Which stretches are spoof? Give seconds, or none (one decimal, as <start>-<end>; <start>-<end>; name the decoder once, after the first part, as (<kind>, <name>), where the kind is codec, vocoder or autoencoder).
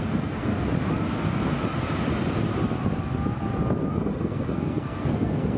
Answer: 0.0-0.5 (codec, SNAC); 3.9-5.6